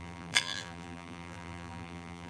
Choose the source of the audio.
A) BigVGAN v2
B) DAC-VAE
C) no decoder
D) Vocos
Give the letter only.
A